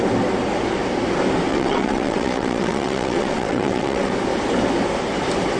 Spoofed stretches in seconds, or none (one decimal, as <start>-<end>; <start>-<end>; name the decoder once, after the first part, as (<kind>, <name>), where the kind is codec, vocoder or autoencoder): 1.5-4.1 (vocoder, WaveNeXt)